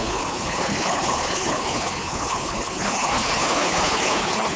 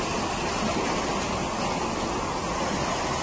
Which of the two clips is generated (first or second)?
first